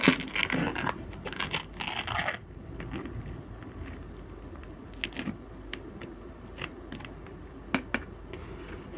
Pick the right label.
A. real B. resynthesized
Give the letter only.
A